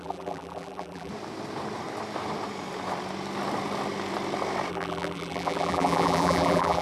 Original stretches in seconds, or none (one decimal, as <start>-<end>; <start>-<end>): 1.1-4.7